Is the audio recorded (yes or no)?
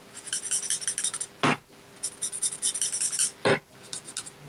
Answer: yes